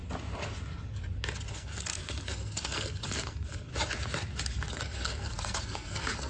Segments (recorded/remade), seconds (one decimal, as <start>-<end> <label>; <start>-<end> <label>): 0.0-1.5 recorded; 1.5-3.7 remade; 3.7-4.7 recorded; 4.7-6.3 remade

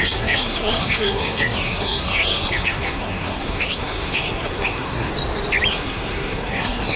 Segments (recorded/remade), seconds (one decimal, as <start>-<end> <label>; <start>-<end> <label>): 0.0-5.1 remade; 5.1-5.7 recorded; 5.7-7.0 remade

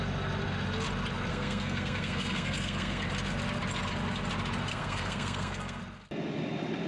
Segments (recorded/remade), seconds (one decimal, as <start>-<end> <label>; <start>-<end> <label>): 0.0-1.3 recorded; 1.3-3.0 remade; 3.0-4.7 recorded; 4.7-5.8 remade; 5.8-6.9 recorded

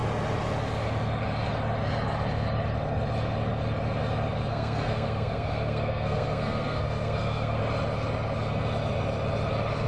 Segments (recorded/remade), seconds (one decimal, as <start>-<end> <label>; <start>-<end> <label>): 0.0-4.5 recorded; 4.5-7.6 remade; 7.6-9.9 recorded